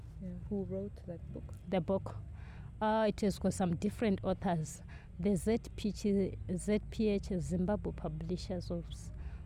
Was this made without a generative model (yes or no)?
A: yes